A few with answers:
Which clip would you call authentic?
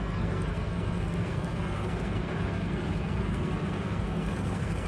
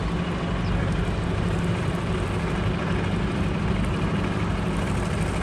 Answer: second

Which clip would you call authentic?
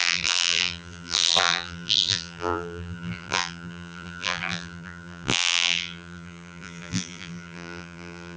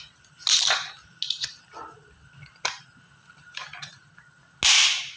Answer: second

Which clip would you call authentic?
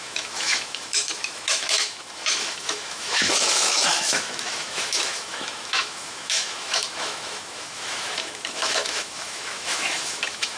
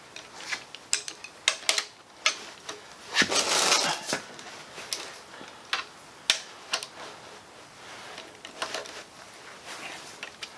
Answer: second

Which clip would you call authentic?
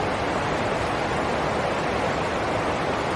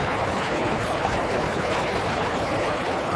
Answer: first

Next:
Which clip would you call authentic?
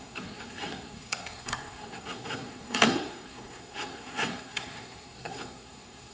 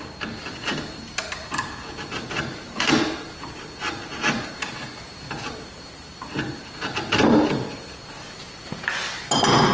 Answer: second